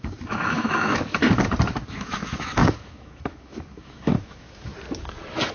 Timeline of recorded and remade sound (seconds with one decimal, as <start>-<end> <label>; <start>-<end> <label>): 0.0-1.2 remade; 1.2-1.8 recorded; 1.8-4.7 remade; 4.7-5.5 recorded